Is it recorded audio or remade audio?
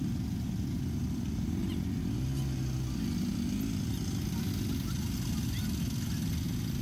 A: recorded